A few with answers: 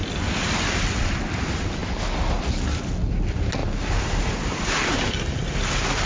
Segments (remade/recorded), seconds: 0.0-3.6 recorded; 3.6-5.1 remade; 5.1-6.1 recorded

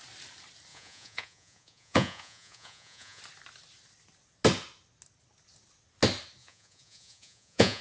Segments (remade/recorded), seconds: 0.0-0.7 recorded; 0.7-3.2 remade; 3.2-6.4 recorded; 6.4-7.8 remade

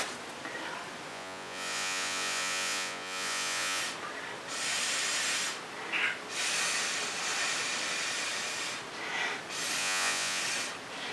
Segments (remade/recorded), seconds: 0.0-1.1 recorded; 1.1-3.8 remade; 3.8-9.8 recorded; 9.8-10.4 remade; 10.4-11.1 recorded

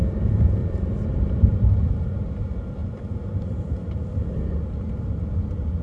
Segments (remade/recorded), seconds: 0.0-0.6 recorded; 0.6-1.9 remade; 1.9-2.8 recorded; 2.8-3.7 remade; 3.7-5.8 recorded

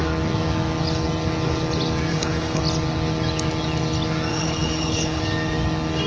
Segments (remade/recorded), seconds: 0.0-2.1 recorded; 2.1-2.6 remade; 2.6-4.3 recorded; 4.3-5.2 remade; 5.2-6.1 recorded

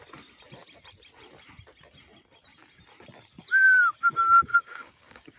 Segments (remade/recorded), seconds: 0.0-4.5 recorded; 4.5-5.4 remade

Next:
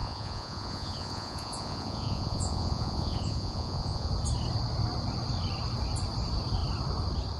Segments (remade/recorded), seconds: 0.0-4.1 remade; 4.1-7.4 recorded